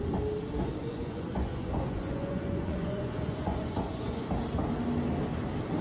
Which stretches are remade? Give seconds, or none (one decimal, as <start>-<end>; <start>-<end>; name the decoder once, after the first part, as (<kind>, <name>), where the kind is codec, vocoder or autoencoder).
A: 0.8-4.3 (vocoder, Vocos)